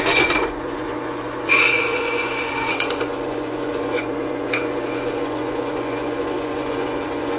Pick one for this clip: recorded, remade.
remade